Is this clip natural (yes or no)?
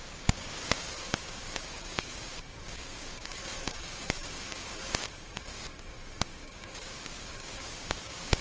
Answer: no